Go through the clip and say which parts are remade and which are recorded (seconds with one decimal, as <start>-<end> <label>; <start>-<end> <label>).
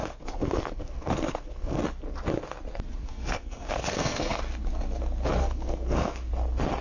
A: 0.0-1.8 remade; 1.8-3.0 recorded; 3.0-4.4 remade; 4.4-5.4 recorded; 5.4-6.3 remade; 6.3-6.8 recorded